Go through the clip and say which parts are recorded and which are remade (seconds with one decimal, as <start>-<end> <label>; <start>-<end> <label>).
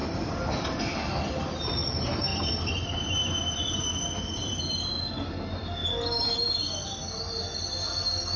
0.0-1.3 remade; 1.3-2.3 recorded; 2.3-4.6 remade; 4.6-5.8 recorded; 5.8-6.9 remade; 6.9-8.4 recorded